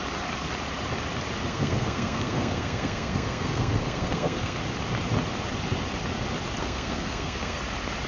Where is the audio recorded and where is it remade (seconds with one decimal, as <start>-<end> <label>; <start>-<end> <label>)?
0.0-1.5 recorded; 1.5-4.6 remade; 4.6-6.6 recorded; 6.6-7.6 remade; 7.6-8.1 recorded